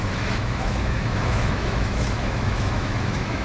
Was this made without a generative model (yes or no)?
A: no